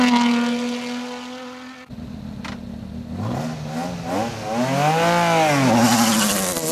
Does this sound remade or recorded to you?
recorded